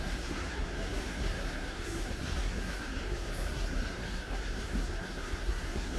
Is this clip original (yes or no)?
no